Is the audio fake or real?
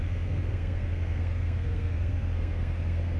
fake